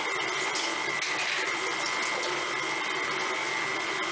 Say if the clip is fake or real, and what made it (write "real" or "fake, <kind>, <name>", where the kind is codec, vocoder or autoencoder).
real